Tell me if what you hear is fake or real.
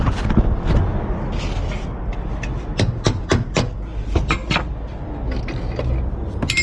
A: real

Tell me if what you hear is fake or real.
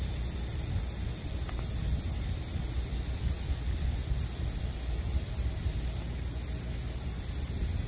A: real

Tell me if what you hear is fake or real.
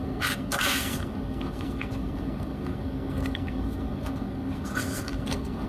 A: fake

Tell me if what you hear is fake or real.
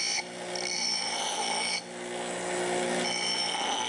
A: real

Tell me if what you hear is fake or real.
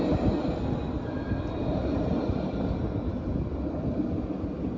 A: real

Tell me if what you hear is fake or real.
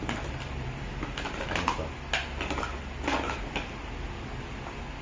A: real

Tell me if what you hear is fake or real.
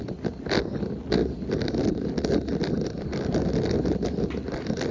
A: real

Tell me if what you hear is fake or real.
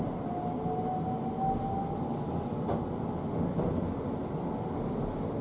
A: real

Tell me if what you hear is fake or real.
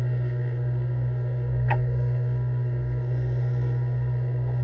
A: fake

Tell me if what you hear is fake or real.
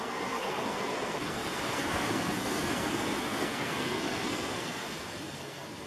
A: fake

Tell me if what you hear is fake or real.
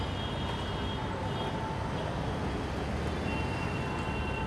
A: real